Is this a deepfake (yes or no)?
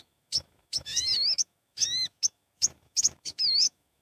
yes